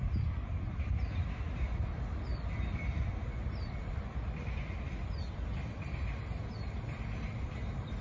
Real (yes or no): yes